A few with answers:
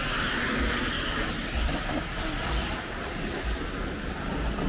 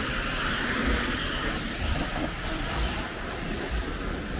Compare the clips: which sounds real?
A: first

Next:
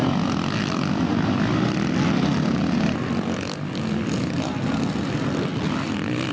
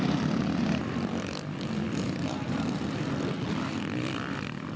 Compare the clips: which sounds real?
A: first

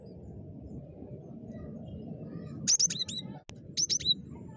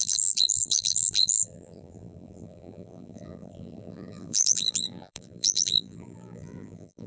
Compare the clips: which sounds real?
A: first